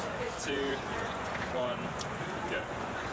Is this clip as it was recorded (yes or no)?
no